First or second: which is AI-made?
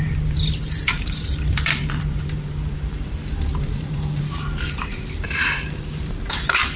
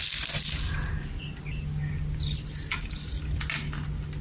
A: first